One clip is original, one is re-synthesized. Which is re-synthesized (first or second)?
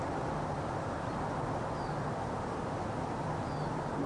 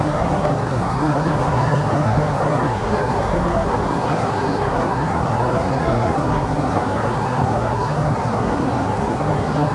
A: second